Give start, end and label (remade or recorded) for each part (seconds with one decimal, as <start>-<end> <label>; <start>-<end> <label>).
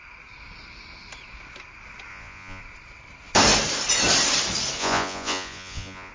0.0-2.1 recorded; 2.1-2.6 remade; 2.6-4.8 recorded; 4.8-6.1 remade